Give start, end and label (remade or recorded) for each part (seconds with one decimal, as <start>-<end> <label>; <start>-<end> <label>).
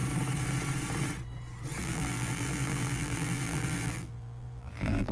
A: 0.0-1.8 recorded; 1.8-5.1 remade